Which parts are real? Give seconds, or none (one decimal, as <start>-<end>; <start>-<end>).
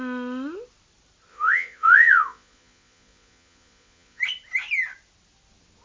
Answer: 0.0-1.3; 4.2-5.8